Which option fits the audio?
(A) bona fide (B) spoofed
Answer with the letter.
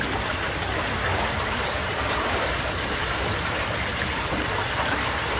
B